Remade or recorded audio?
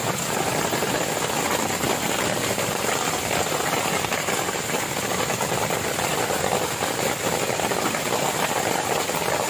recorded